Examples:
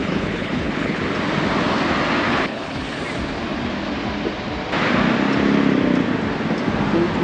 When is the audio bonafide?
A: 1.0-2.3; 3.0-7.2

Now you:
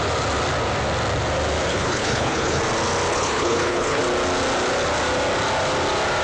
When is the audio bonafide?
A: 0.0-1.7; 2.6-3.1; 4.0-6.2

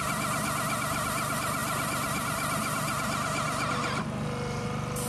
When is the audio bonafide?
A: 0.0-5.1

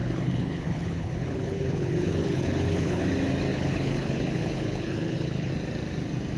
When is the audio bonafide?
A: 3.0-3.5; 5.5-6.4